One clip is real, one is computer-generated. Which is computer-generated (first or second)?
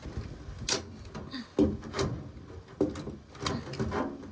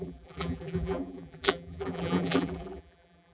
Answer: second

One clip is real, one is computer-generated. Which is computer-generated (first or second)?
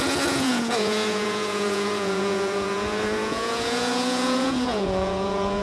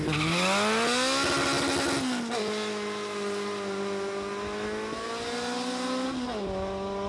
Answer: first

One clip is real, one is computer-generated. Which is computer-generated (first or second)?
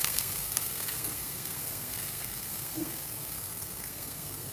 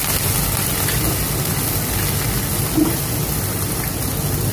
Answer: first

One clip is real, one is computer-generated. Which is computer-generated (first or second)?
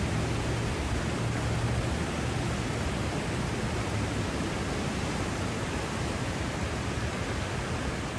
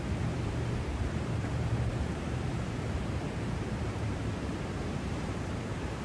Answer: second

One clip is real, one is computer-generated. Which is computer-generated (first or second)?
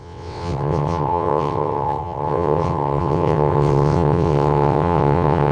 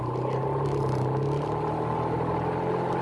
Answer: first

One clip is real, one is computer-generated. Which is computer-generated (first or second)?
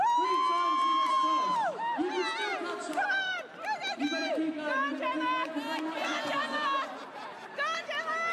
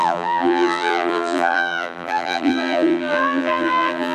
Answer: second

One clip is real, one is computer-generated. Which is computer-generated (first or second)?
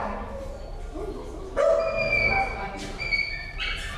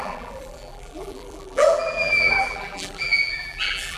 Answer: second